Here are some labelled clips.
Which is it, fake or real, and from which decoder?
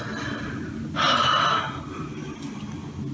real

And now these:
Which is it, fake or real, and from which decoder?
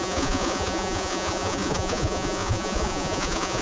fake, vocoder, Vocos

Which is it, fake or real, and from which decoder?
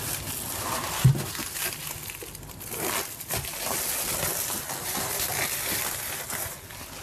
real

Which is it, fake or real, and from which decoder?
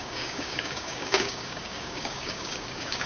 fake, codec, DAC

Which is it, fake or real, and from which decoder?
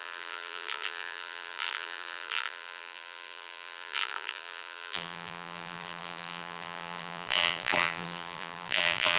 fake, vocoder, BigVGAN v2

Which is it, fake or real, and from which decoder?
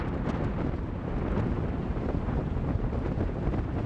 real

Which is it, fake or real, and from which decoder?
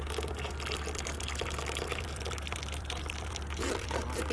fake, vocoder, BigVGAN v2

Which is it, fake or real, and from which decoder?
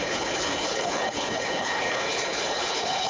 fake, codec, HILCodec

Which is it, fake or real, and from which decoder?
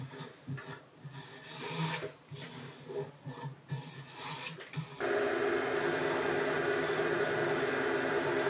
real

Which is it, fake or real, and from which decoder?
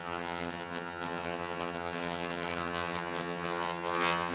fake, vocoder, HiFi-GAN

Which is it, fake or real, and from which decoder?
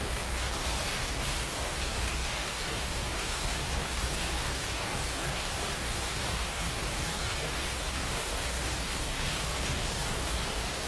fake, codec, DAC